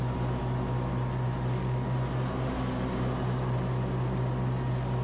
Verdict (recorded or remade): recorded